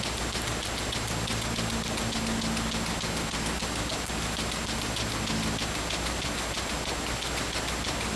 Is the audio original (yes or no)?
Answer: yes